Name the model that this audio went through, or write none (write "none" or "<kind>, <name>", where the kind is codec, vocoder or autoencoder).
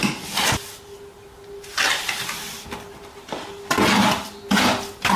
none